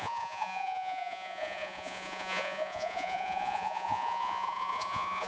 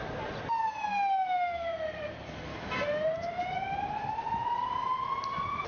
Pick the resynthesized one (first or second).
first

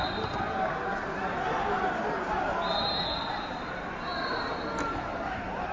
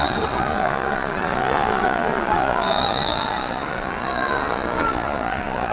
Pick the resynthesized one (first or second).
second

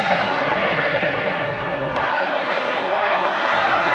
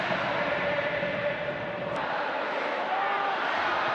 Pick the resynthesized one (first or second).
first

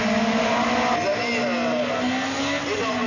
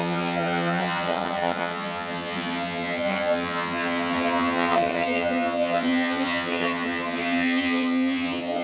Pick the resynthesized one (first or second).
second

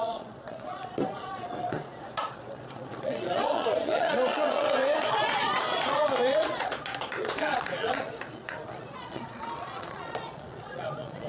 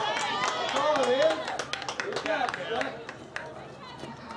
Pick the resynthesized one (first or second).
first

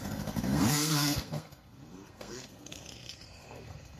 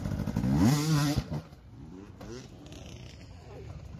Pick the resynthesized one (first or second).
first